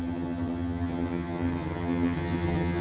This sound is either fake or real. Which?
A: fake